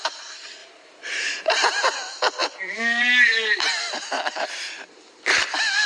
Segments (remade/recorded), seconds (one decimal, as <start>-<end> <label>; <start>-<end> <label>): 0.0-0.6 recorded; 0.6-1.3 remade; 1.3-2.4 recorded; 2.4-5.4 remade; 5.4-5.9 recorded